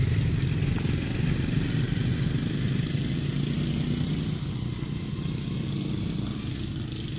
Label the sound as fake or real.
real